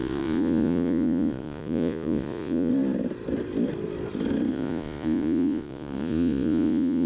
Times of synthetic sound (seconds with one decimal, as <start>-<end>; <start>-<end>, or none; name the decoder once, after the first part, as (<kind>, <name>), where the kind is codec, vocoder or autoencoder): 0.0-2.7 (vocoder, Vocos); 4.5-7.1